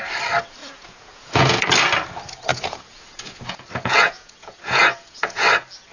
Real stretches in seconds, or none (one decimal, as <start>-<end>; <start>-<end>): 0.0-0.6; 1.6-2.5; 5.4-5.9